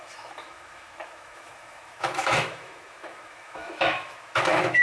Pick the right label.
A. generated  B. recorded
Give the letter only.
A